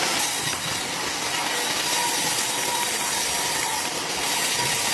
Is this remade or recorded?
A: recorded